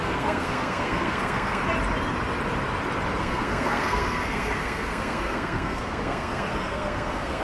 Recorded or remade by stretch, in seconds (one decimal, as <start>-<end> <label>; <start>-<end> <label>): 0.0-1.6 remade; 1.6-3.2 recorded; 3.2-7.4 remade